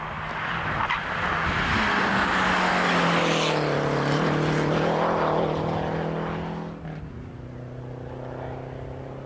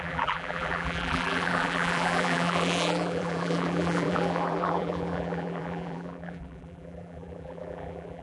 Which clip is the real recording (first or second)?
first